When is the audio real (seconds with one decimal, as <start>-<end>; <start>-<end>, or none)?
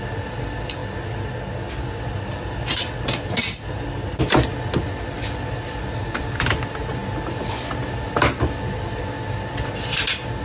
0.0-10.4